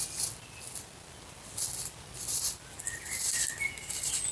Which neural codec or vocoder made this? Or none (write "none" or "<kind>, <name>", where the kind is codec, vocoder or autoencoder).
none